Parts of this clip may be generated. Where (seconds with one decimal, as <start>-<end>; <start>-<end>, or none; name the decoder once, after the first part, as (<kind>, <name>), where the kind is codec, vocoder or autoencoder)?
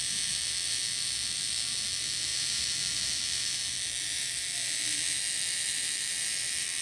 0.0-6.8 (vocoder, BigVGAN v2)